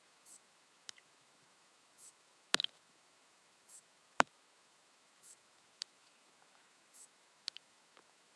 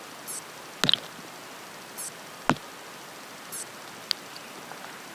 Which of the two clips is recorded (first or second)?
second